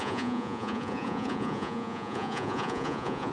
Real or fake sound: fake